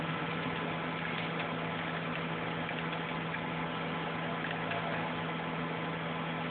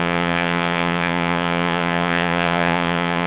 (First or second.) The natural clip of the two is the first